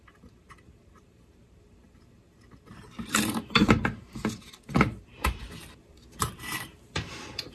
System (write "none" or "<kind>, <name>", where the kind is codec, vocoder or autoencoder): vocoder, BigVGAN v2